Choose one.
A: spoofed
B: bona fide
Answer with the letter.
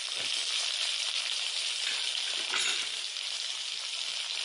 B